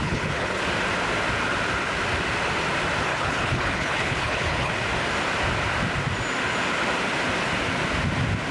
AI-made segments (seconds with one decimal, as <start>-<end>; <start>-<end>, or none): 0.0-0.6; 3.1-4.7